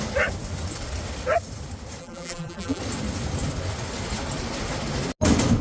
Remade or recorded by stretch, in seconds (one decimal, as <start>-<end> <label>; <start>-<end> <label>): 0.0-2.0 recorded; 2.0-2.8 remade; 2.8-5.6 recorded